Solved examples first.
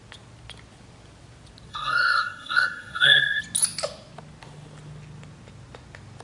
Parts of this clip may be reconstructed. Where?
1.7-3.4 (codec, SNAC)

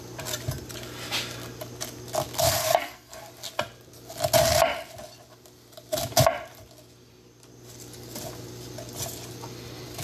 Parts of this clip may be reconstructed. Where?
2.6-3.2 (codec, SNAC)

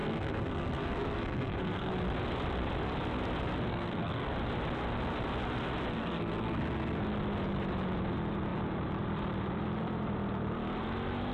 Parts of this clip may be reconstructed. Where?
0.0-1.9 (codec, SNAC); 3.7-4.3; 5.9-7.0

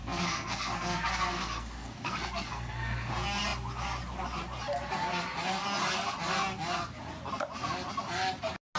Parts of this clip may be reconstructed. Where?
0.0-3.1 (codec, SNAC)

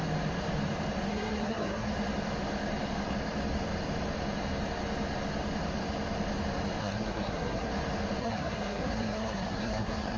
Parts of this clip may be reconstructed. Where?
1.1-1.9 (codec, SNAC); 6.8-7.7; 8.2-10.2